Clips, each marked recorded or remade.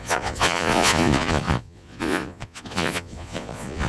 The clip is remade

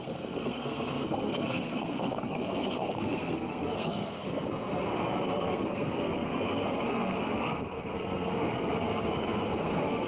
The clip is remade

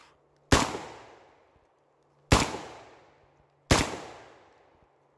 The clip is recorded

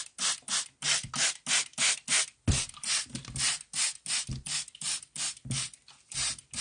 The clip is recorded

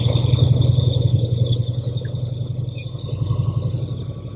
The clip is recorded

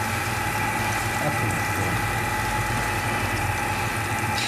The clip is recorded